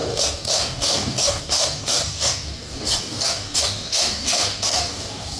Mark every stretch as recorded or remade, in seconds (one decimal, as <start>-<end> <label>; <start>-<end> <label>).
0.0-5.4 remade

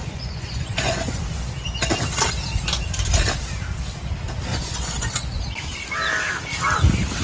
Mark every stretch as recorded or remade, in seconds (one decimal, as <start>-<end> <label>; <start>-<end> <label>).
0.0-1.2 remade; 1.2-4.5 recorded; 4.5-5.4 remade; 5.4-7.2 recorded

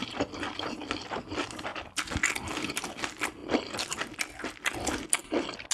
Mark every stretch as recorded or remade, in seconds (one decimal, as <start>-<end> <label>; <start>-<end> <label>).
0.0-5.7 recorded